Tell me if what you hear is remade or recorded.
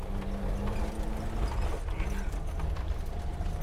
recorded